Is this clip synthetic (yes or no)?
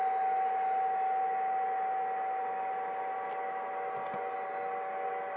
no